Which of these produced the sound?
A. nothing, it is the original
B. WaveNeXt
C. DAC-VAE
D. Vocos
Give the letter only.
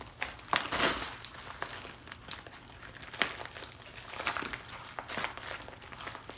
A